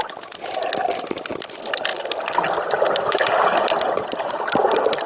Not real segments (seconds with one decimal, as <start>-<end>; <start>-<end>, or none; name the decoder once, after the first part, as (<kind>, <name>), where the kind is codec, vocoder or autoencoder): none